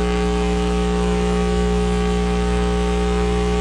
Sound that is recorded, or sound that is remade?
remade